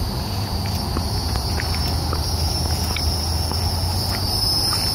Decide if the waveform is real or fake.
real